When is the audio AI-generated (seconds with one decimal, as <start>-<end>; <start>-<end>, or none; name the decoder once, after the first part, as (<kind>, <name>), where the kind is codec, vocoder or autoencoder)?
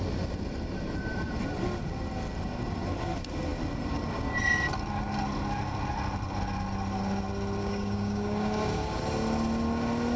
7.6-9.0 (codec, DAC)